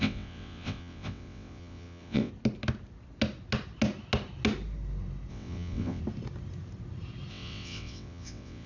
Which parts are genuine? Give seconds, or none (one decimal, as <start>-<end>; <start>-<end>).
2.3-5.3; 6.0-7.3